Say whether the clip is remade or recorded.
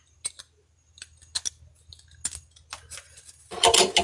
recorded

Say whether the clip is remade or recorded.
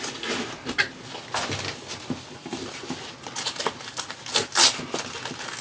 recorded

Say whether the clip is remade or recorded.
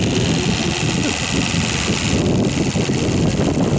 recorded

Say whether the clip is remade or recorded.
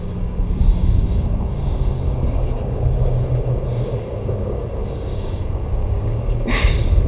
remade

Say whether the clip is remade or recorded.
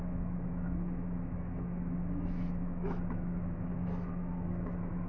remade